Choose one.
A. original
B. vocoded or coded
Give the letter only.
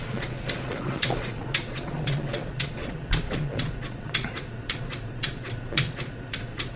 B